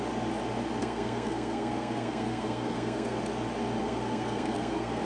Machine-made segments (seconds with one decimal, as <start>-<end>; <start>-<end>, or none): 0.8-3.2; 3.8-5.0

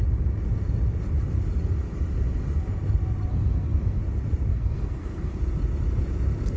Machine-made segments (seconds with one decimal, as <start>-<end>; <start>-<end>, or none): 3.3-4.0; 4.5-5.4

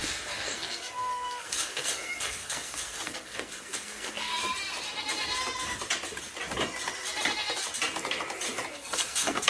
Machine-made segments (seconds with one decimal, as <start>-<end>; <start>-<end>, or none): 0.0-4.3; 8.7-9.5